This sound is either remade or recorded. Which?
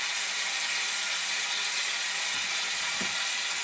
recorded